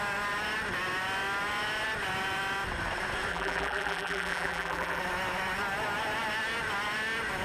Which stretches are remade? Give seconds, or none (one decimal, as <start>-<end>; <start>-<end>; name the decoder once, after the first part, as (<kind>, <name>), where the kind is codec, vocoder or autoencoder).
3.3-5.0 (vocoder, BigVGAN v2)